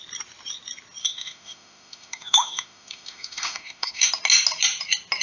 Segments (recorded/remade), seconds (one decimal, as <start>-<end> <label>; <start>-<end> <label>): 0.0-1.0 recorded; 1.0-4.1 remade; 4.1-5.2 recorded